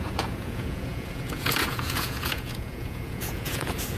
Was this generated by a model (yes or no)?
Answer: yes